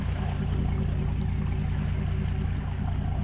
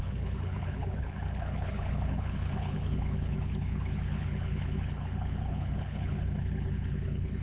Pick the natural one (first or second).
first